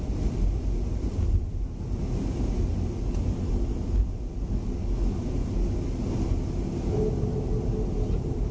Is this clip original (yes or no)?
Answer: yes